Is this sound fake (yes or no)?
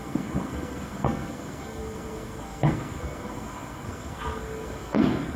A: yes